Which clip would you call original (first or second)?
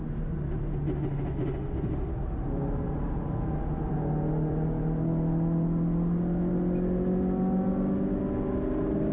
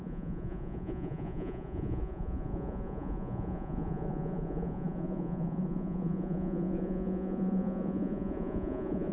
first